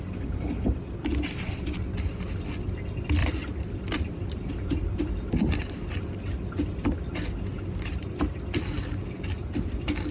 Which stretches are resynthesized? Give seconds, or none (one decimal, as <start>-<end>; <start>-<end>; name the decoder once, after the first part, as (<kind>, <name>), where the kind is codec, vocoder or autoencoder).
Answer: 3.2-4.5 (vocoder, BigVGAN v2)